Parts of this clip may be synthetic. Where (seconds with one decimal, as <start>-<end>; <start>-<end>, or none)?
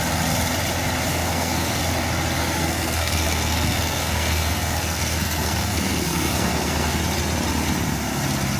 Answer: 1.1-1.8; 2.4-7.0